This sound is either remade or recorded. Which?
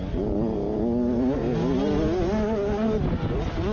recorded